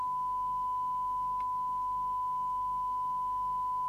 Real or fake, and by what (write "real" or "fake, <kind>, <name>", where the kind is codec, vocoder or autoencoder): real